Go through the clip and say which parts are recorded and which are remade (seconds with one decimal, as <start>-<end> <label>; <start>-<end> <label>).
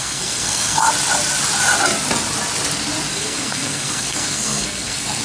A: 0.0-0.9 remade; 0.9-3.1 recorded; 3.1-5.2 remade